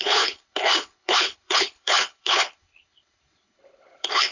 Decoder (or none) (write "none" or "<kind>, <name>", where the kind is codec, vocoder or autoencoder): codec, HILCodec